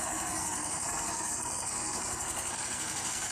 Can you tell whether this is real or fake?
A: fake